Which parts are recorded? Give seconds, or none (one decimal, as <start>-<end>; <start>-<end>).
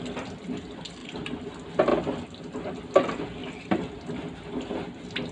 0.0-1.0; 1.5-3.4; 3.9-5.3